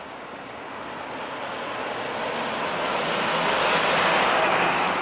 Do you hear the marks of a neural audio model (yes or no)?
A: no